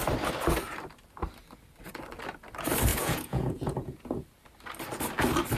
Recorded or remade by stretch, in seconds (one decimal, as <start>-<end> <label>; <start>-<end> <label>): 0.0-2.9 recorded; 2.9-4.0 remade; 4.0-5.6 recorded